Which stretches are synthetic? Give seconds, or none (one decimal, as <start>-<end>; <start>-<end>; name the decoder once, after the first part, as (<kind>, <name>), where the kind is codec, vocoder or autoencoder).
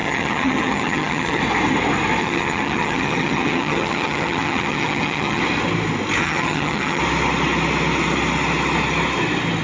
0.0-1.4 (vocoder, HiFi-GAN); 2.2-5.4; 6.2-7.0